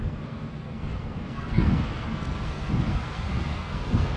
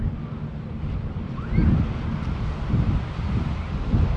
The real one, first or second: second